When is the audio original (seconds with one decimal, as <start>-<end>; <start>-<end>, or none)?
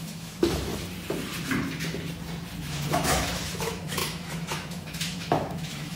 0.7-2.6